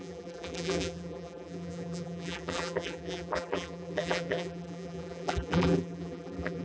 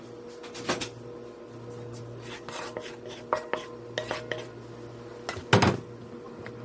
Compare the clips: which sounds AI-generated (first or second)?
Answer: first